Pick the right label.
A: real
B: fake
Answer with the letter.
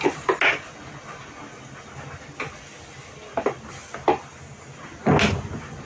A